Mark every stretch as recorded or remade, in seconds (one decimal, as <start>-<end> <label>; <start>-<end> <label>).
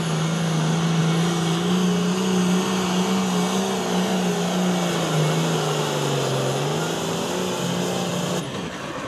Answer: 0.0-9.1 recorded